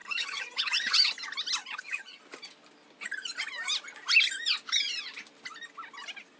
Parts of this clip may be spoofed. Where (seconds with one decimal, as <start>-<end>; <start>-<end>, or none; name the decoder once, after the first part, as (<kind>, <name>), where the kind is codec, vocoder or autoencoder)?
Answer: 0.0-1.1 (vocoder, HiFi-GAN); 1.6-2.2